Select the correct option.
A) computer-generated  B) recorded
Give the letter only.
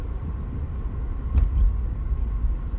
B